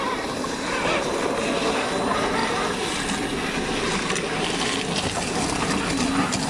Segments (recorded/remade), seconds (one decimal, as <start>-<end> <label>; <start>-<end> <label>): 0.0-6.5 recorded